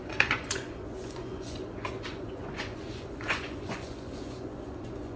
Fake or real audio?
fake